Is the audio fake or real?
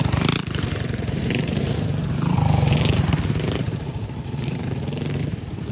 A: fake